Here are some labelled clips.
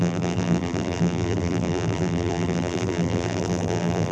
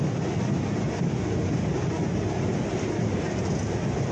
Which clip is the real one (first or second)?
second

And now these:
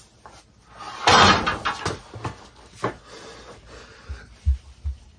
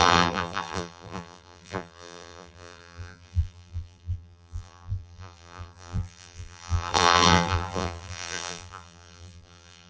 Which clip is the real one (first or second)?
first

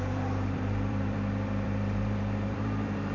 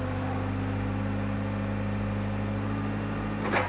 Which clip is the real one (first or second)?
second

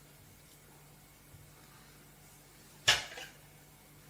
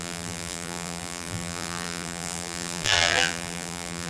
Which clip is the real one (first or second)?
first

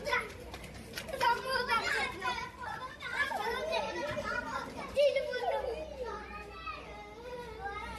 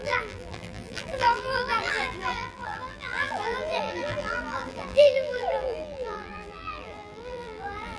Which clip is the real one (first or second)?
first